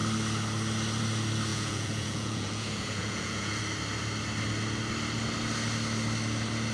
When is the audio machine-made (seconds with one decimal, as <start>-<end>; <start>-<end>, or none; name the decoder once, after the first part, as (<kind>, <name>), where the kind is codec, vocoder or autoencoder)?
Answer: 1.5-3.6 (vocoder, Vocos)